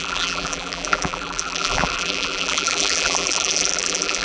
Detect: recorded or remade remade